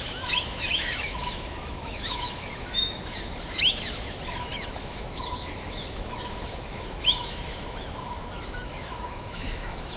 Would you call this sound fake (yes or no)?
yes